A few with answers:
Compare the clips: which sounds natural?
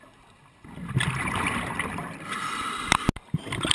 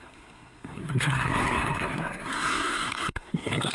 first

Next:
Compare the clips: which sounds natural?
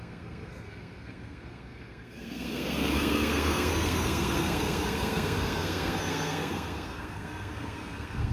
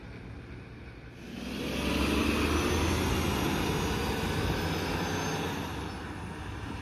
second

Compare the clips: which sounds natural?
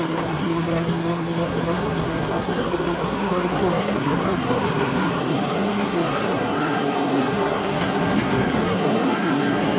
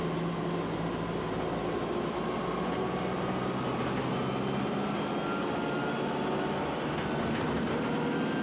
second